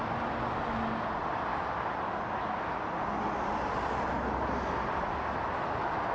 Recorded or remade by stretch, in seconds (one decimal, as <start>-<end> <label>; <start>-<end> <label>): 0.0-6.1 recorded

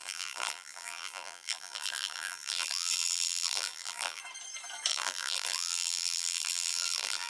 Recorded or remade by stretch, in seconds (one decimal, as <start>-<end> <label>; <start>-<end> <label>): 0.0-4.2 remade; 4.2-4.9 recorded; 4.9-7.3 remade

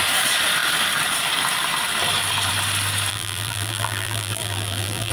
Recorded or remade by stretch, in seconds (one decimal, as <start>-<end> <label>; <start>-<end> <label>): 0.0-3.1 recorded; 3.1-5.1 remade

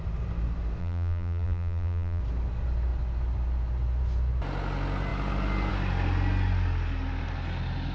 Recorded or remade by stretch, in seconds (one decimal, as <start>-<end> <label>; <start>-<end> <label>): 0.0-0.8 recorded; 0.8-2.2 remade; 2.2-7.9 recorded

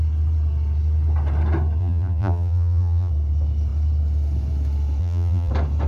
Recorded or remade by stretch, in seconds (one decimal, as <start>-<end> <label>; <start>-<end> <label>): 0.0-1.8 recorded; 1.8-3.1 remade; 3.1-5.0 recorded; 5.0-5.5 remade; 5.5-5.9 recorded

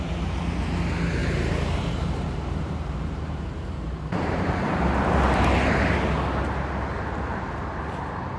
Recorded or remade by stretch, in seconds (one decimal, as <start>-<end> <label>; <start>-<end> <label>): 0.0-1.2 recorded; 1.2-5.1 remade; 5.1-8.4 recorded

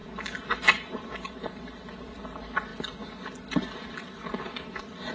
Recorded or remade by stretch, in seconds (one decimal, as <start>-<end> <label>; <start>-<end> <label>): 0.0-2.7 remade; 2.7-3.9 recorded; 3.9-5.1 remade

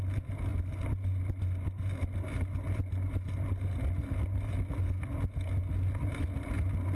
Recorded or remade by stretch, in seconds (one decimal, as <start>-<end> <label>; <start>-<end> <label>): 0.0-7.0 recorded